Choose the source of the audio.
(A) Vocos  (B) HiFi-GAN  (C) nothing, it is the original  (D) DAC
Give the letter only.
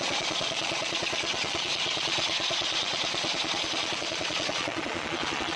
A